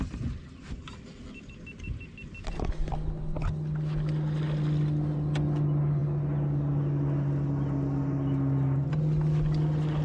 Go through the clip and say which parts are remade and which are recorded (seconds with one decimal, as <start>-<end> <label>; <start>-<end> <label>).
0.0-10.0 recorded